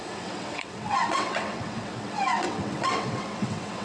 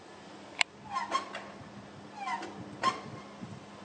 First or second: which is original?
second